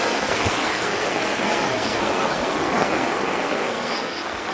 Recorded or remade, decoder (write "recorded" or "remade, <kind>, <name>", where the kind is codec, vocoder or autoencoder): remade, codec, SNAC